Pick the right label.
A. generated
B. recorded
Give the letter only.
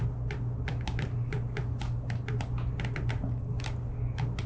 B